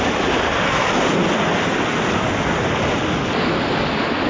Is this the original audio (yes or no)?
yes